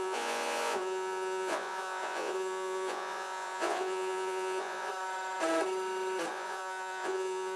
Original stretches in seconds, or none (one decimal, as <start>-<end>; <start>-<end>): 4.9-6.3